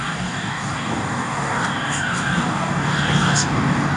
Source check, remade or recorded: remade